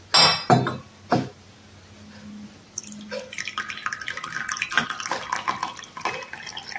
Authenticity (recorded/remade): recorded